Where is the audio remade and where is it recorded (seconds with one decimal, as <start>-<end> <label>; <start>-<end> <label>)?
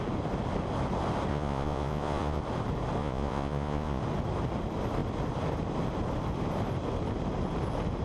0.0-1.3 recorded; 1.3-2.4 remade; 2.4-3.0 recorded; 3.0-4.0 remade; 4.0-8.0 recorded